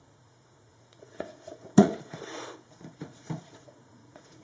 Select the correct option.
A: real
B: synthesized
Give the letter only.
B